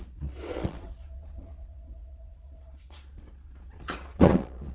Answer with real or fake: fake